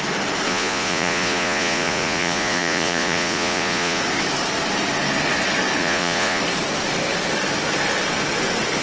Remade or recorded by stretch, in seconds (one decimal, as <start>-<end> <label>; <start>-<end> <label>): 0.0-0.5 recorded; 0.5-4.0 remade; 4.0-5.8 recorded; 5.8-6.4 remade; 6.4-8.8 recorded